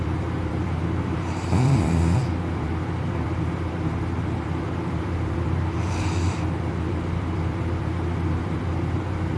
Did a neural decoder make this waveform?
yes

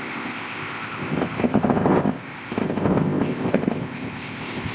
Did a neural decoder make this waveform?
yes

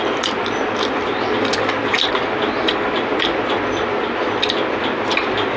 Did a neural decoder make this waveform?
no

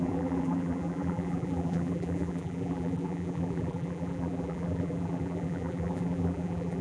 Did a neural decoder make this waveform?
yes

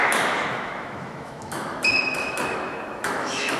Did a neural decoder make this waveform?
yes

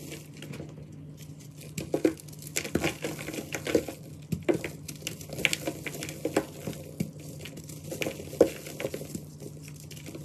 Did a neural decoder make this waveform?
no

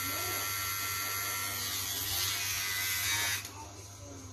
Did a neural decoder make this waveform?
no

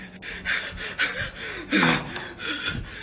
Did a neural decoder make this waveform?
no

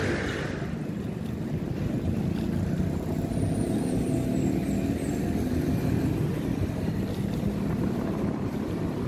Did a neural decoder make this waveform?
no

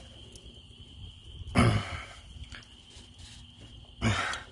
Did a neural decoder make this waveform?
no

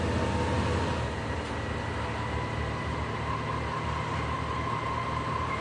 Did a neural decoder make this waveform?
no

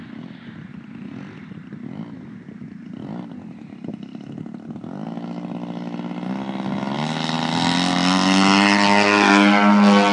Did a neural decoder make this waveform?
no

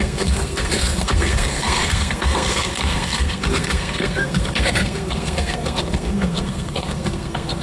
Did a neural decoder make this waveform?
yes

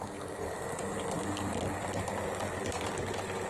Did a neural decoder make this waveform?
no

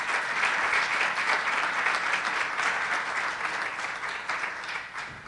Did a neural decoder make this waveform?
no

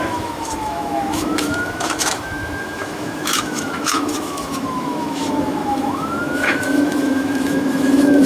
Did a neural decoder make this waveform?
yes